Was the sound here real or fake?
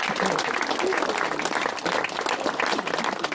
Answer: real